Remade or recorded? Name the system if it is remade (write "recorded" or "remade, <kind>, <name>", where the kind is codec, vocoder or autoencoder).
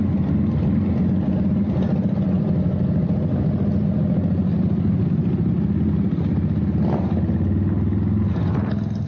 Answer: recorded